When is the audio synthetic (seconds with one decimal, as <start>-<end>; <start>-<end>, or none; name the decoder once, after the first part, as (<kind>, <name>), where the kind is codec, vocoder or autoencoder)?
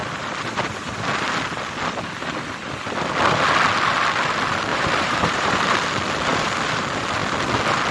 4.7-5.6 (vocoder, BigVGAN v2)